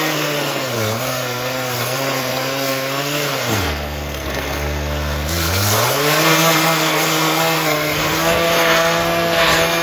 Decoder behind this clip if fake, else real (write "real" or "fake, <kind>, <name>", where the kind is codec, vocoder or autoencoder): fake, codec, SNAC